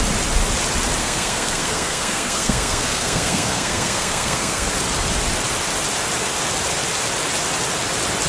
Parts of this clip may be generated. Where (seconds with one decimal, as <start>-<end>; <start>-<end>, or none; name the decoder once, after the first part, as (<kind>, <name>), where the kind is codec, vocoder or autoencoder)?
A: 1.0-4.7 (codec, SNAC)